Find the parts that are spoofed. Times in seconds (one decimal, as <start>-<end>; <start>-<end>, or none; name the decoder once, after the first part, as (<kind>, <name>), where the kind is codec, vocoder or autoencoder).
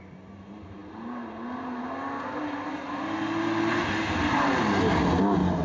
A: none